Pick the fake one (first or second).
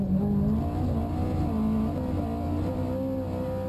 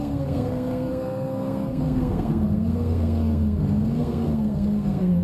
second